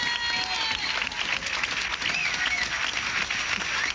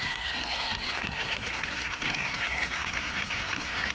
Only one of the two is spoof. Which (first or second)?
second